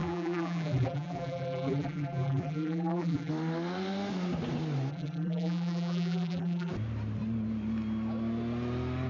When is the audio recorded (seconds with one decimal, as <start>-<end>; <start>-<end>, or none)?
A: 3.3-4.9; 6.7-9.1